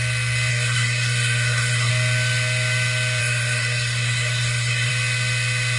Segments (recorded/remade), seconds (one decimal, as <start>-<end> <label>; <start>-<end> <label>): 0.0-0.5 recorded; 0.5-1.9 remade; 1.9-3.2 recorded; 3.2-4.9 remade; 4.9-5.8 recorded